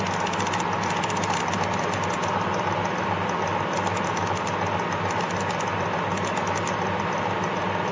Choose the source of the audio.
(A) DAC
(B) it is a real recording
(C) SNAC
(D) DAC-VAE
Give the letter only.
B